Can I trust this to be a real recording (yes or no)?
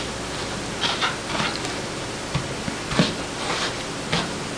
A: yes